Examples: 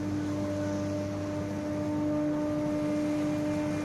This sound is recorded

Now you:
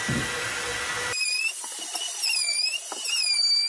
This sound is recorded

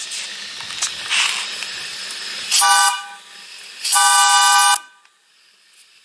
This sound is recorded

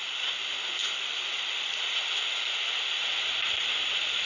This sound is recorded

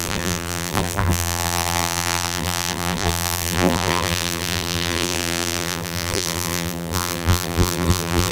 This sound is remade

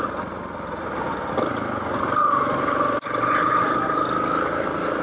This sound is recorded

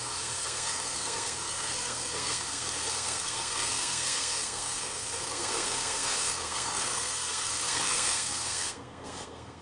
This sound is remade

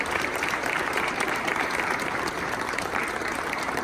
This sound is remade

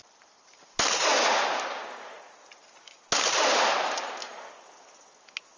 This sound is recorded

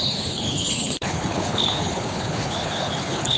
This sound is remade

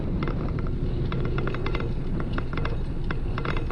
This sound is recorded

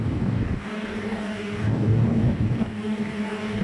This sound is remade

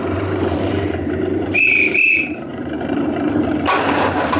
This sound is remade